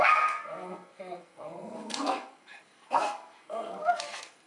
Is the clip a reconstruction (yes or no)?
yes